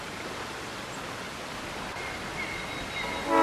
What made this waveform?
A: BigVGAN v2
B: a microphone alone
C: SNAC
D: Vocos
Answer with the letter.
B